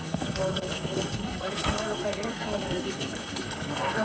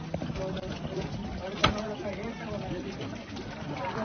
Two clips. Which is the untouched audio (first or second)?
second